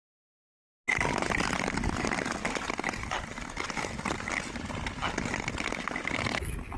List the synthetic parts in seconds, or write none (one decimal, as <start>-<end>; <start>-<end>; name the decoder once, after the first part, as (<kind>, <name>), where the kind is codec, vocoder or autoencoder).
none